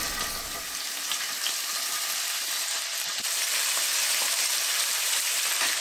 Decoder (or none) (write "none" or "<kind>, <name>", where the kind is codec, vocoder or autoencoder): none